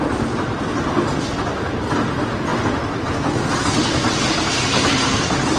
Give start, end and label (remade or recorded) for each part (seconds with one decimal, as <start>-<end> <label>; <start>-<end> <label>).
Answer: 0.0-5.6 recorded